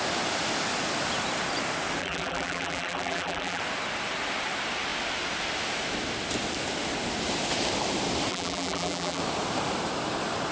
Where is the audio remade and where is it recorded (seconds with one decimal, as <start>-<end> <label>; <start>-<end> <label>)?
0.0-2.0 recorded; 2.0-3.6 remade; 3.6-8.3 recorded; 8.3-9.2 remade; 9.2-10.5 recorded

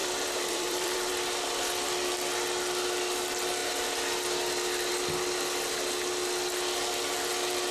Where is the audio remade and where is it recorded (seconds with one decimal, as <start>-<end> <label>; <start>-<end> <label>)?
0.0-1.1 remade; 1.1-7.7 recorded

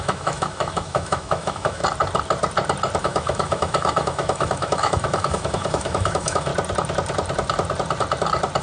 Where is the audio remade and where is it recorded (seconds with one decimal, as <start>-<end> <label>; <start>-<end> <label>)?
0.0-1.8 remade; 1.8-3.0 recorded; 3.0-6.5 remade; 6.5-8.6 recorded

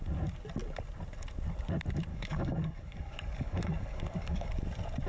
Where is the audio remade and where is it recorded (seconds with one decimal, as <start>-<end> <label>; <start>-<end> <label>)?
0.0-2.1 recorded; 2.1-4.5 remade; 4.5-5.1 recorded

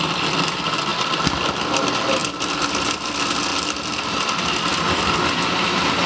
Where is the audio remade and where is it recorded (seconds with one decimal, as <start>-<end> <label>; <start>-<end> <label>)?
0.0-6.1 recorded

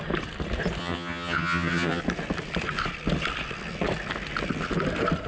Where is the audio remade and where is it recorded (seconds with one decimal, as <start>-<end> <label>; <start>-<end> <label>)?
0.0-0.8 recorded; 0.8-2.0 remade; 2.0-5.3 recorded